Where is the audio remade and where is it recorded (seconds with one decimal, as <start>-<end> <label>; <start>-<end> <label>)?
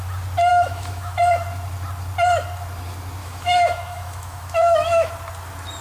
0.0-0.5 recorded; 0.5-1.2 remade; 1.2-3.2 recorded; 3.2-5.1 remade; 5.1-5.8 recorded